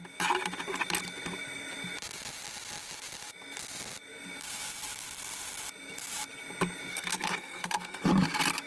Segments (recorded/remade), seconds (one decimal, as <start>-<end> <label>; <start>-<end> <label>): 0.0-6.9 recorded; 6.9-8.0 remade; 8.0-8.7 recorded